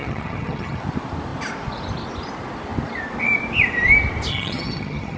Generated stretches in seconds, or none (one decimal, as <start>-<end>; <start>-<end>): 0.0-0.8; 4.3-5.2